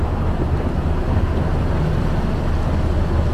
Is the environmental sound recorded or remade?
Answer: recorded